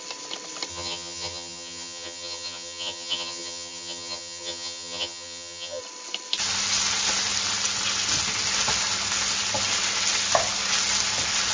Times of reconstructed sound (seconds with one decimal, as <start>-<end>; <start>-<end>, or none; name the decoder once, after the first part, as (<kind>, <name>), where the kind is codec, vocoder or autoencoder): 0.7-5.8 (vocoder, HiFi-GAN)